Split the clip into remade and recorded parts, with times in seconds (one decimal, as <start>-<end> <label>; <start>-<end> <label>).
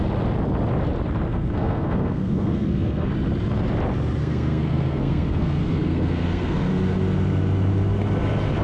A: 0.0-1.3 recorded; 1.3-3.1 remade; 3.1-4.2 recorded; 4.2-6.7 remade; 6.7-8.6 recorded